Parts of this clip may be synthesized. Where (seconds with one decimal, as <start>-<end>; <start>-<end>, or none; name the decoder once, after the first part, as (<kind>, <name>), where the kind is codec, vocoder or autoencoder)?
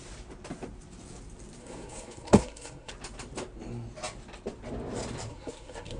1.6-2.9 (codec, SNAC); 5.3-6.0